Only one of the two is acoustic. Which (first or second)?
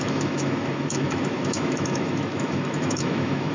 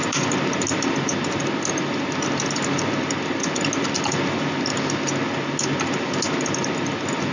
second